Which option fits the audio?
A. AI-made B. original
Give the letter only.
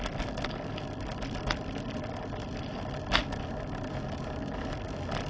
B